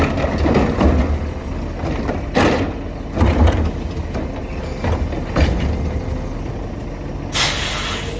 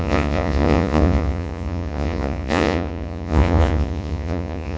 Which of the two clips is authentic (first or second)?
first